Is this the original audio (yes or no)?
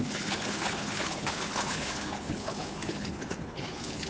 no